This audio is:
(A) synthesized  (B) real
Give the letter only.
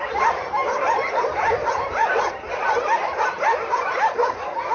B